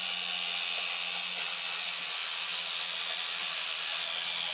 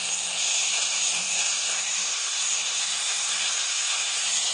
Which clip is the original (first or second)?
first